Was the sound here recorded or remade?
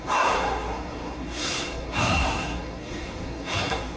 remade